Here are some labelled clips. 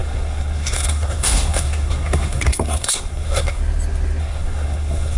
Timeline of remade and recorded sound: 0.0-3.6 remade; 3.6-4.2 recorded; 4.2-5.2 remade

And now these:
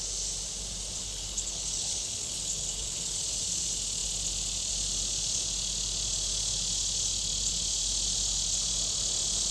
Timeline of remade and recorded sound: 0.0-1.0 recorded; 1.0-3.2 remade; 3.2-9.5 recorded

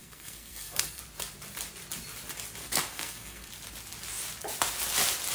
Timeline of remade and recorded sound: 0.0-1.0 remade; 1.0-2.6 recorded; 2.6-3.5 remade; 3.5-5.3 recorded

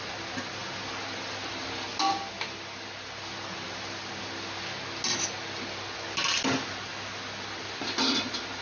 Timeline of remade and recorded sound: 0.0-8.6 recorded

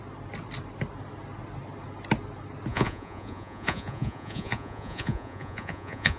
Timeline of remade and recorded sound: 0.0-2.7 recorded; 2.7-6.2 remade

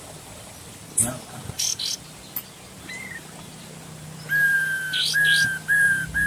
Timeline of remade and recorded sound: 0.0-1.9 remade; 1.9-4.4 recorded; 4.4-6.3 remade

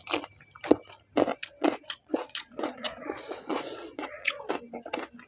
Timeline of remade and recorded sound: 0.0-1.3 recorded; 1.3-4.5 remade; 4.5-5.3 recorded